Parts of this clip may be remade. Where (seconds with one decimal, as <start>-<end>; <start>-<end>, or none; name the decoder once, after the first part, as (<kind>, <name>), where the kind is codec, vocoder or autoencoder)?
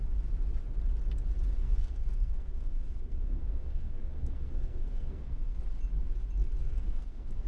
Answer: 1.6-5.6 (codec, SNAC); 6.6-7.5